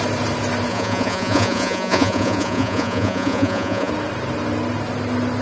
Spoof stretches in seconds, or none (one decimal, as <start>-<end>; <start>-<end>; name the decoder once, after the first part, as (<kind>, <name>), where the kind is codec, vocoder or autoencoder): 0.7-3.9 (vocoder, Vocos)